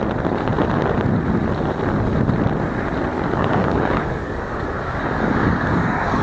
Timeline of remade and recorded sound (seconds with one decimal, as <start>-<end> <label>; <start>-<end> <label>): 0.0-3.1 recorded; 3.1-6.2 remade